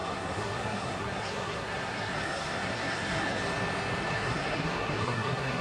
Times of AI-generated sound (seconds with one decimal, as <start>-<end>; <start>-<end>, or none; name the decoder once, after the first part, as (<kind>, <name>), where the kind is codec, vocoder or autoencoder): 0.0-3.4 (codec, SNAC); 4.0-5.6

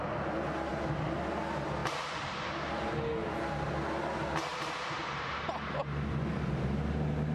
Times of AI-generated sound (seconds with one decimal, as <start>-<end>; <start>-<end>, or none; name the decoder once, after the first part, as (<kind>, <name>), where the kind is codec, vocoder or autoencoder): 1.8-2.7 (vocoder, BigVGAN v2); 4.5-5.3

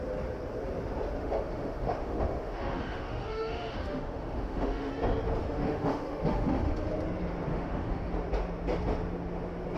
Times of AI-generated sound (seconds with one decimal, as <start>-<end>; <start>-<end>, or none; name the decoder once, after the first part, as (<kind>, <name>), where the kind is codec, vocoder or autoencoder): 1.2-4.9 (autoencoder, DAC-VAE); 5.4-6.9; 7.5-8.1